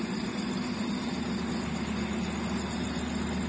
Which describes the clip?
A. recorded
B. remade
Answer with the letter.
A